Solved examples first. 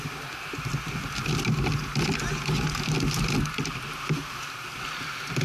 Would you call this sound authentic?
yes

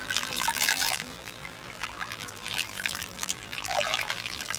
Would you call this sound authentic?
no